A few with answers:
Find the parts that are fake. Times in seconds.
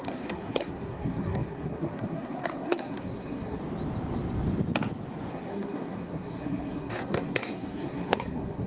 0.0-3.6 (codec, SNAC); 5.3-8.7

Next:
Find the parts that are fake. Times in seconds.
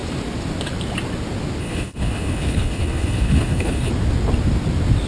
1.6-3.9 (codec, HILCodec)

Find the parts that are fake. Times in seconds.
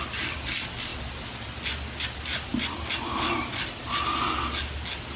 none